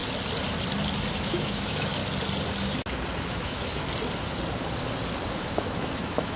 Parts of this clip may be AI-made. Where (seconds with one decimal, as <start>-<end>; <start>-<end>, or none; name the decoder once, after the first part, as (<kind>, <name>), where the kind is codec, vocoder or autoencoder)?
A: 1.1-2.0 (autoencoder, DAC-VAE); 3.2-3.7; 5.3-6.4

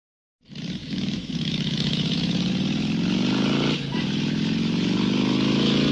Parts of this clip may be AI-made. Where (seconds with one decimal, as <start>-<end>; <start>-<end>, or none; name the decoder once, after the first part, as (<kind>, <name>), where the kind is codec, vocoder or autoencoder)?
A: 0.8-2.5 (autoencoder, DAC-VAE)

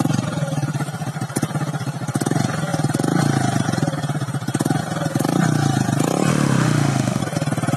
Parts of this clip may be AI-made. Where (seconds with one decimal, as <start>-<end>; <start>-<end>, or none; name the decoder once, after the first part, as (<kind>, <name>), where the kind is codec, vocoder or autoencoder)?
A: 6.3-7.2 (autoencoder, DAC-VAE)